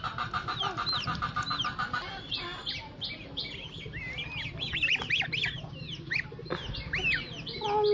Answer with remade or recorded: recorded